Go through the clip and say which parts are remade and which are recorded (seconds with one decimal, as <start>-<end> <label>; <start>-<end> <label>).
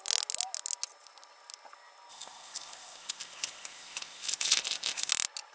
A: 0.0-2.1 recorded; 2.1-5.1 remade; 5.1-5.5 recorded